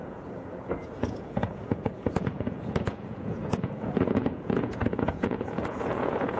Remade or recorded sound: remade